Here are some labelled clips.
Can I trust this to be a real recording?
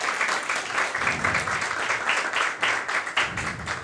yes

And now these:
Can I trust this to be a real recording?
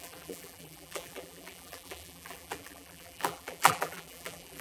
no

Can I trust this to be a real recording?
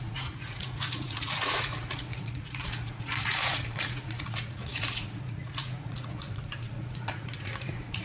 no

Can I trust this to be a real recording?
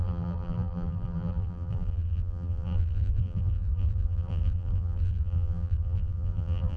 no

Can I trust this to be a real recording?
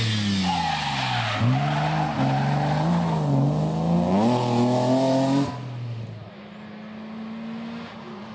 yes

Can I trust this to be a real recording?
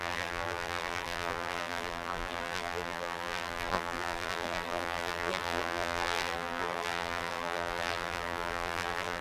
no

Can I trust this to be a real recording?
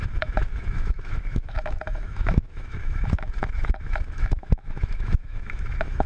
no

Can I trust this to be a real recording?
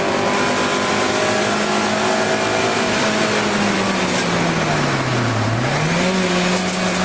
yes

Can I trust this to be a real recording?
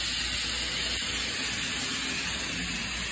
yes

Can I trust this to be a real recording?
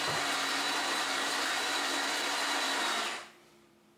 no